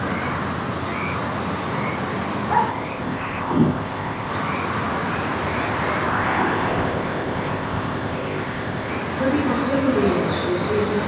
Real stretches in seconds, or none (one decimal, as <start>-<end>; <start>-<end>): 0.0-2.7; 4.3-6.1; 8.9-11.1